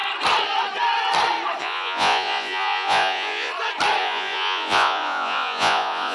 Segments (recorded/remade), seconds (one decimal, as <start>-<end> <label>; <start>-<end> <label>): 0.0-1.6 recorded; 1.6-3.5 remade; 3.5-4.0 recorded; 4.0-6.1 remade